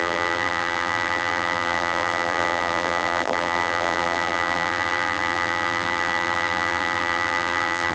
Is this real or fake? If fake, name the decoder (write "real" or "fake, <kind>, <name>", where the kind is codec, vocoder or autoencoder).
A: fake, vocoder, BigVGAN v2